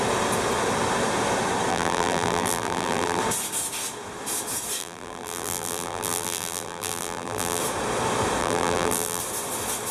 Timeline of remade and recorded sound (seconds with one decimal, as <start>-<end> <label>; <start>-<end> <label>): 0.0-1.7 recorded; 1.7-3.2 remade; 3.2-4.8 recorded; 4.8-7.6 remade; 7.6-8.4 recorded; 8.4-9.2 remade; 9.2-9.9 recorded